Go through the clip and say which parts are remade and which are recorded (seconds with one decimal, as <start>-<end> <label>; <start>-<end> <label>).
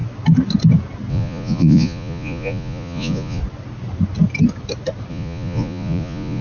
0.0-1.1 recorded; 1.1-3.4 remade; 3.4-5.1 recorded; 5.1-6.4 remade